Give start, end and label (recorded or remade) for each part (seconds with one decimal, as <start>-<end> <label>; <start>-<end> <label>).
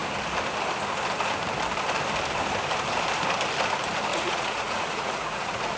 0.0-4.1 recorded; 4.1-5.8 remade